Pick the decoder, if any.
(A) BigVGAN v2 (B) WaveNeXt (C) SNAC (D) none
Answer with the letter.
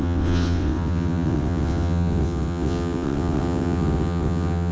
B